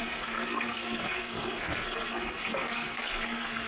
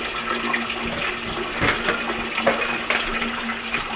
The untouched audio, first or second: second